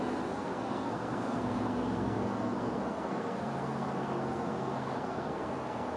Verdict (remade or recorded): remade